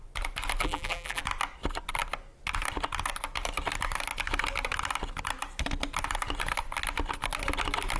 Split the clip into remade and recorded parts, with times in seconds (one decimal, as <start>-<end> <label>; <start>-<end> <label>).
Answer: 0.0-0.6 recorded; 0.6-1.2 remade; 1.2-8.0 recorded